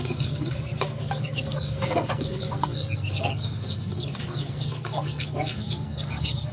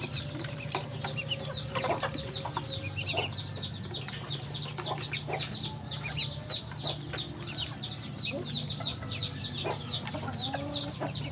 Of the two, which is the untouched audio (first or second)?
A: second